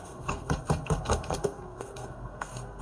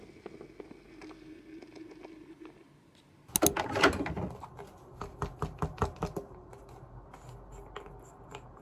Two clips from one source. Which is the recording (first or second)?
second